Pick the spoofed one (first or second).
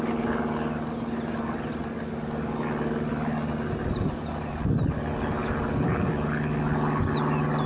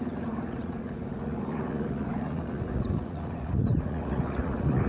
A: second